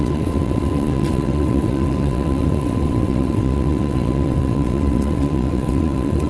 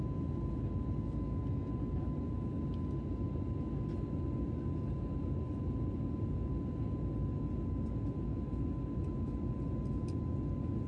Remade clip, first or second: first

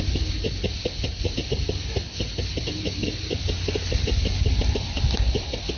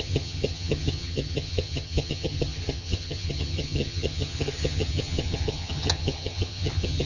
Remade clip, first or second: second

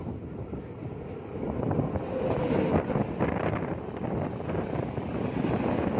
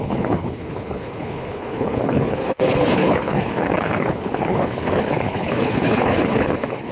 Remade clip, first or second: second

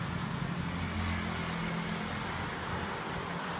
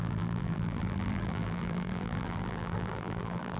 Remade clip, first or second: second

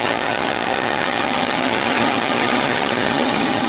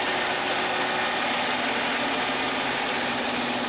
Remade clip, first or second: first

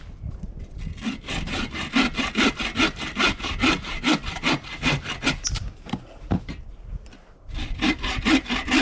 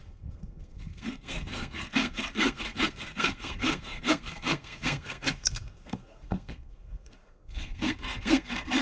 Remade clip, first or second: second